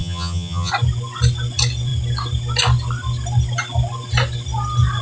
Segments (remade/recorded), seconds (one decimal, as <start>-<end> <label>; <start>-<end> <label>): 0.0-0.7 remade; 0.7-5.0 recorded